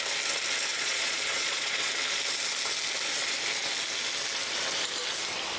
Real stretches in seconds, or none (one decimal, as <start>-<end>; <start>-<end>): 0.0-0.7; 1.9-5.6